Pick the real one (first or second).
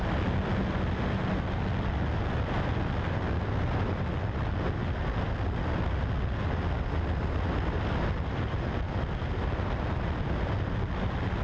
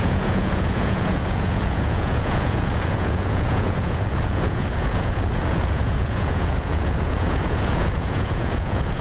first